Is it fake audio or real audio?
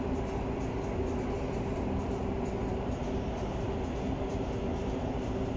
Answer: real